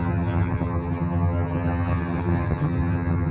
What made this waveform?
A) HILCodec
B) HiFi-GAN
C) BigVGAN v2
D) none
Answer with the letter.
B